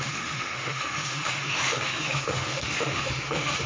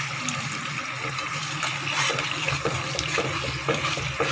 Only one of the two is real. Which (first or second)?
second